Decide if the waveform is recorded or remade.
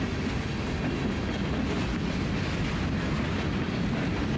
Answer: recorded